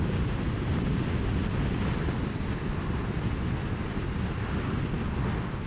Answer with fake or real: real